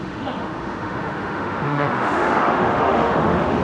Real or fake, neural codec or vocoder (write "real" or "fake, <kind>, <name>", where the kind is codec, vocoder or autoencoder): fake, autoencoder, DAC-VAE